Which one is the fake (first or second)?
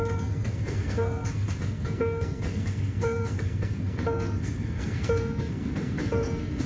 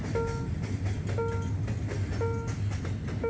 first